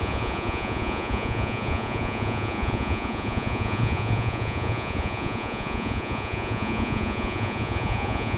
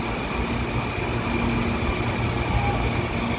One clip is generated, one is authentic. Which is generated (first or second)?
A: first